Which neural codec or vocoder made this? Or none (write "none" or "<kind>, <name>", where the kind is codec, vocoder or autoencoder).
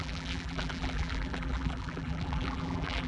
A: vocoder, BigVGAN v2